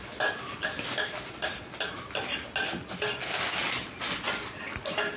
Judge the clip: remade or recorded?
recorded